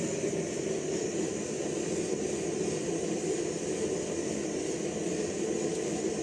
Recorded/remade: recorded